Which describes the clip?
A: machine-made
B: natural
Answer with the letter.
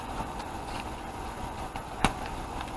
A